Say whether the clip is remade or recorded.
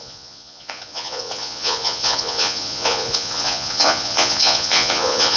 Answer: remade